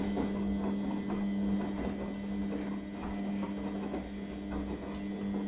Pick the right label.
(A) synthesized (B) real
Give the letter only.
B